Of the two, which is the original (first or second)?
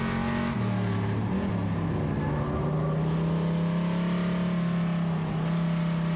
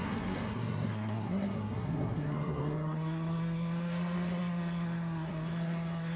first